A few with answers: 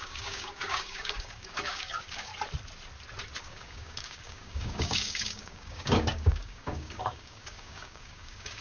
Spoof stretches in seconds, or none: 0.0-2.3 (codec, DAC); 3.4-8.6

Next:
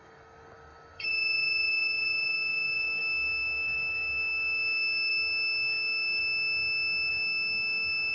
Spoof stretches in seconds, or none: 0.0-1.1 (codec, DAC); 1.7-6.2; 7.1-8.1

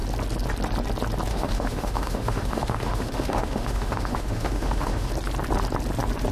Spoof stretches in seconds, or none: 1.3-5.1 (autoencoder, DAC-VAE)

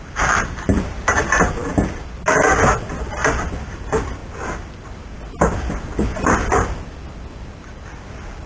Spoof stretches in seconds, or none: none

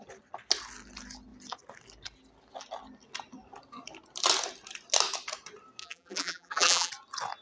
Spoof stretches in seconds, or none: 5.8-6.9 (vocoder, BigVGAN v2)

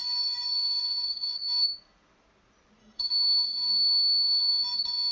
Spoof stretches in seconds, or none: 0.0-1.3 (codec, DAC); 2.8-4.5

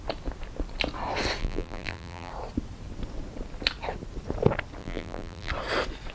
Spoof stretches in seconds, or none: 1.4-2.3 (vocoder, BigVGAN v2); 4.8-5.5

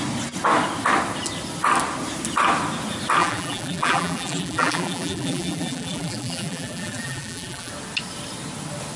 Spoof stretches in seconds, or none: 3.2-7.7 (vocoder, BigVGAN v2)